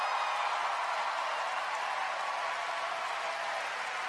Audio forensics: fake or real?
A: real